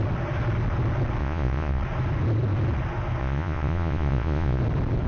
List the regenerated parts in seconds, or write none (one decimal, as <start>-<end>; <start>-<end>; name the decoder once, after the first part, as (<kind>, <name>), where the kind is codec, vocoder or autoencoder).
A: 1.2-1.8 (vocoder, Vocos); 3.2-4.6